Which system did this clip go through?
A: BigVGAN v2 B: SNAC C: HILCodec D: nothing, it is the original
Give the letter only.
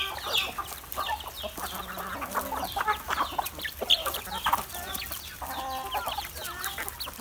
D